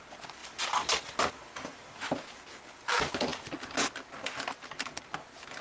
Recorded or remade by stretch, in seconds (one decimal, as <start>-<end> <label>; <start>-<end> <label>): 0.0-5.6 recorded